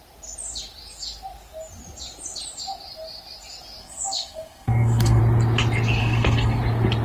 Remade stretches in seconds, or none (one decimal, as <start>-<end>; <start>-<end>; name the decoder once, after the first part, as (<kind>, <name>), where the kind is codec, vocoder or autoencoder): 3.8-5.2 (codec, SNAC); 6.0-6.6